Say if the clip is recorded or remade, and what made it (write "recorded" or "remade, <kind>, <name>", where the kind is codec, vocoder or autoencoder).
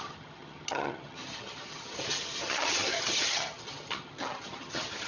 remade, vocoder, HiFi-GAN